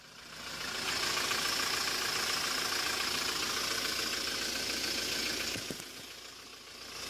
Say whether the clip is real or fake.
real